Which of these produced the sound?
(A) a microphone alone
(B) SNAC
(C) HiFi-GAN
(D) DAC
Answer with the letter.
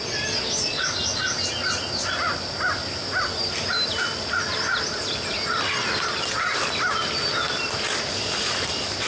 A